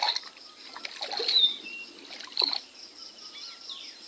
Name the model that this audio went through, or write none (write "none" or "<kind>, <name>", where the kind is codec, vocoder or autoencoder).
none